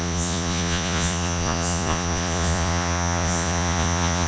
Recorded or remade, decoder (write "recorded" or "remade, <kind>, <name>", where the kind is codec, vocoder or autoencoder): remade, vocoder, Vocos